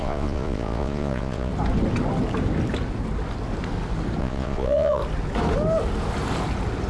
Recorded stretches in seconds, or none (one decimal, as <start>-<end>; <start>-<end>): 1.5-4.2; 5.0-6.9